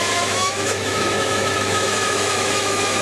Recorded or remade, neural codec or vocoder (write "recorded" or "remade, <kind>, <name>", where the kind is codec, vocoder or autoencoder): remade, autoencoder, DAC-VAE